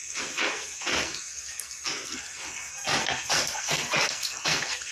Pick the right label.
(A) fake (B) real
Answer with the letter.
A